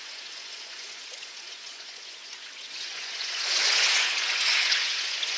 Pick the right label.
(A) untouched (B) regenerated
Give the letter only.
B